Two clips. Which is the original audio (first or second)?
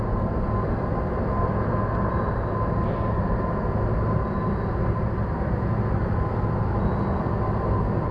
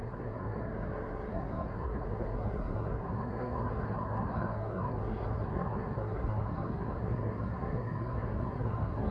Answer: first